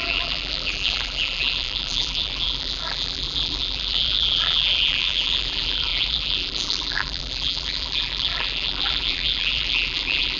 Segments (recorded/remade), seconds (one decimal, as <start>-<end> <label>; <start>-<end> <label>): 0.0-10.4 remade